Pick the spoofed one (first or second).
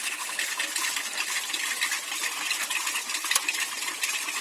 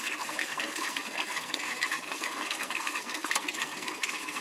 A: second